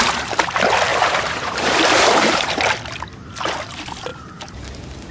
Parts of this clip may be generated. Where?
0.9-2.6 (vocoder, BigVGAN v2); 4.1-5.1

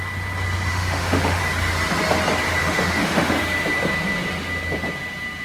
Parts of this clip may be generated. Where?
0.7-1.4 (autoencoder, DAC-VAE); 2.6-3.4

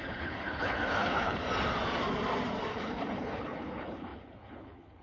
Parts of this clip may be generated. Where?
0.0-1.4 (codec, HILCodec); 2.7-5.0